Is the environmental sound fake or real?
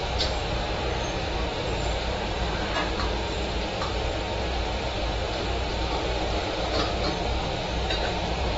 fake